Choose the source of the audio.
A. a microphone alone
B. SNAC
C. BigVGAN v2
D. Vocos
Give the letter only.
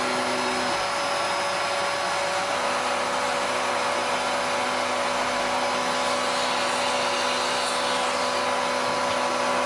A